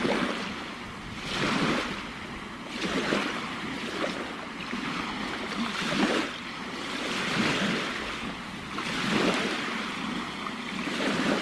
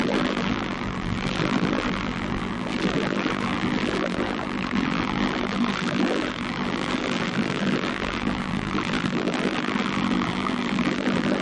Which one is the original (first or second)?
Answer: first